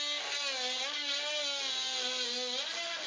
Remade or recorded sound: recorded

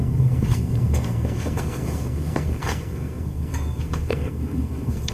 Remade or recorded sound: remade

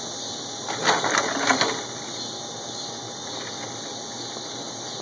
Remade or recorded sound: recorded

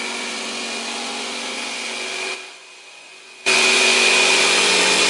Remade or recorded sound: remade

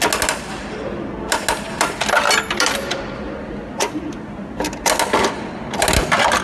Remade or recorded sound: recorded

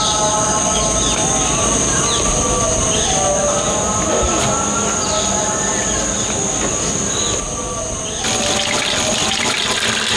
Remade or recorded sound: recorded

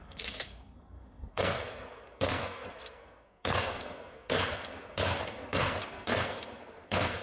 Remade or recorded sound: remade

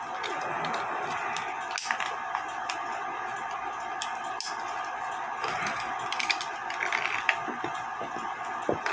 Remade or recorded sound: recorded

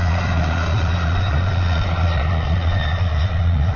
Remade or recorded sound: remade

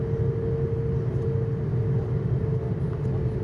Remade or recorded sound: recorded